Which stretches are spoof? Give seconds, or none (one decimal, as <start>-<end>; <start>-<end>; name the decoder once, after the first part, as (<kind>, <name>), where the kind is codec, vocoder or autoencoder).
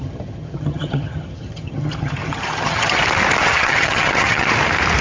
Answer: 0.0-3.0 (vocoder, HiFi-GAN); 3.4-4.5